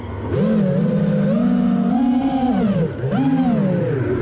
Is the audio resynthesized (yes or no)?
no